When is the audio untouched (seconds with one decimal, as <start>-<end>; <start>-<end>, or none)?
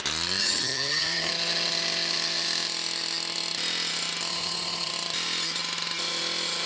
0.0-0.4; 1.3-4.3; 4.9-6.7